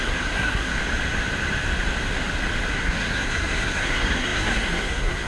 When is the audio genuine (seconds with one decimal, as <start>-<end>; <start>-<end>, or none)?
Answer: 0.8-2.7